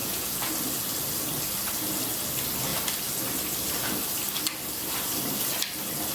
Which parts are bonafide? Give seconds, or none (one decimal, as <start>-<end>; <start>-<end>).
0.5-6.1